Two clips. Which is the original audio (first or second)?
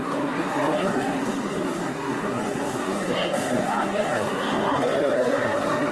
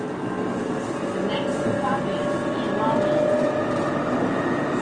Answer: second